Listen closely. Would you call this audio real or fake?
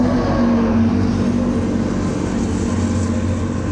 real